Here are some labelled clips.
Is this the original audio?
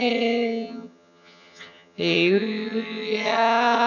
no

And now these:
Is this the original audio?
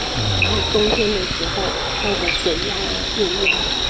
yes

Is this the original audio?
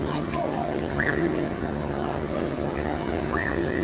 no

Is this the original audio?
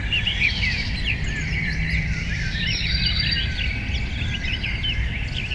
no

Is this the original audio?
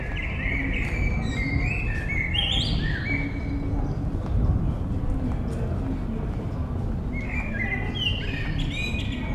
yes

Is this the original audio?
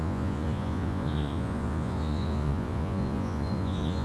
no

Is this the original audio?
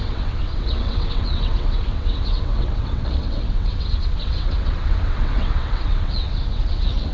no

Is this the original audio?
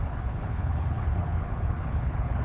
no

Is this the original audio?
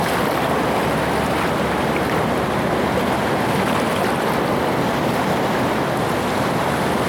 yes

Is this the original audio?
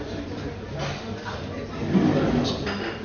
yes